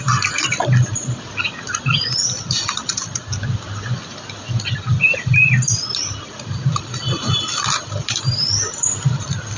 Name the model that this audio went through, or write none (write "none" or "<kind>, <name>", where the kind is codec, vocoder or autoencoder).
vocoder, BigVGAN v2